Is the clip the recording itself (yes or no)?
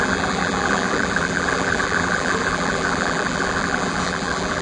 no